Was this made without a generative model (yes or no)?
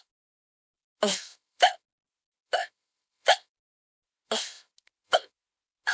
yes